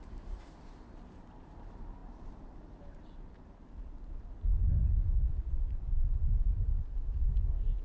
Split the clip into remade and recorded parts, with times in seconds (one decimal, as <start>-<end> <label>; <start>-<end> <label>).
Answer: 0.0-7.8 remade